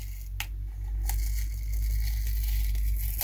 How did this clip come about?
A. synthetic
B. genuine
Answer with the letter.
B